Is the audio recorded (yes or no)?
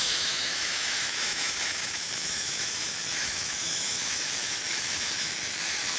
no